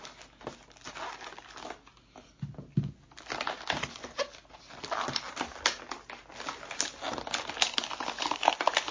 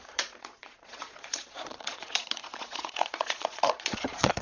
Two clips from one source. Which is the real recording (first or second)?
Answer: first